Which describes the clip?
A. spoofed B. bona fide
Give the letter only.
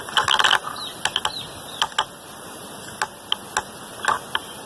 B